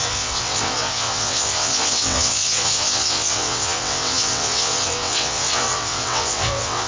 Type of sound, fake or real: fake